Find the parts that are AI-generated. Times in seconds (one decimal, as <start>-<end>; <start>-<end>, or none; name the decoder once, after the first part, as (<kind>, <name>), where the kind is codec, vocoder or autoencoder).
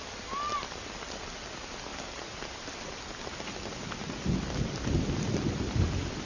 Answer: none